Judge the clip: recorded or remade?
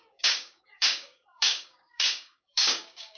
remade